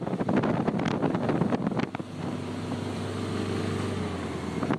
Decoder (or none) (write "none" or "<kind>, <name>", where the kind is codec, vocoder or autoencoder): none